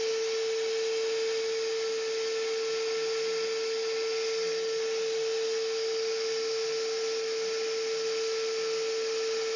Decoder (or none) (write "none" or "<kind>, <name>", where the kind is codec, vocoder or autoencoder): none